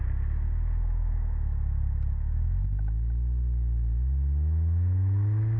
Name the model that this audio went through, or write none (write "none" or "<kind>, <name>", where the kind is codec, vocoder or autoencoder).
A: none